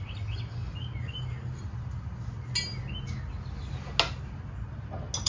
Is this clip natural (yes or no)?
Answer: yes